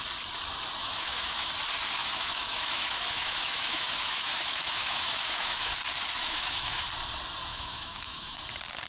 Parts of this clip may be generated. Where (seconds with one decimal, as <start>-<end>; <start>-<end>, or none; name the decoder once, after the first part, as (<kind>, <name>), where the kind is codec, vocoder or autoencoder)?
0.8-1.5 (autoencoder, DAC-VAE); 2.0-5.7; 6.2-6.8; 7.5-8.4